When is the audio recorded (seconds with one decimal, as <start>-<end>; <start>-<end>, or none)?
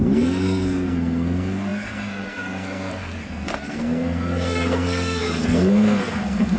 none